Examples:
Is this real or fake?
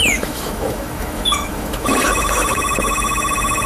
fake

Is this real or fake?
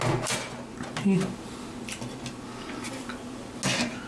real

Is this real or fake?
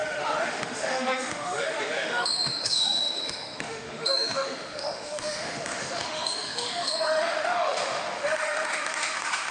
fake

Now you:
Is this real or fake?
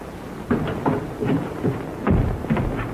real